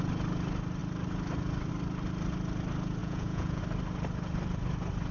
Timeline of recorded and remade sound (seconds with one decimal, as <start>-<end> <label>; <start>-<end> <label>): 0.0-3.0 recorded; 3.0-3.6 remade; 3.6-5.1 recorded